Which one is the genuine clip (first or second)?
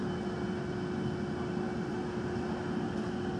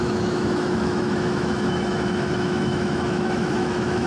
first